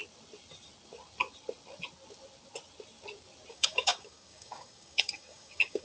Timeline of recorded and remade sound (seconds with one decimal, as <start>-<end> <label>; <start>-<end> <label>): 0.0-3.5 recorded; 3.5-5.8 remade

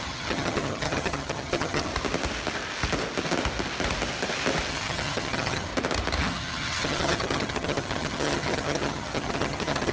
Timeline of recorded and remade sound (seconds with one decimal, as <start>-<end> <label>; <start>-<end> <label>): 0.0-1.9 remade; 1.9-4.7 recorded; 4.7-5.7 remade; 5.7-6.2 recorded; 6.2-9.9 remade

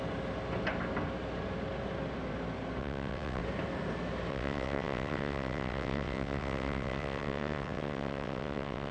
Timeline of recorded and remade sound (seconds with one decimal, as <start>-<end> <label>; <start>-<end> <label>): 0.0-2.8 recorded; 2.8-3.4 remade; 3.4-4.3 recorded; 4.3-8.9 remade

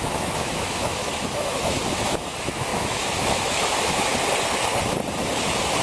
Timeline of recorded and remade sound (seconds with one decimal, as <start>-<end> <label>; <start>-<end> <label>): 0.0-4.1 remade; 4.1-5.8 recorded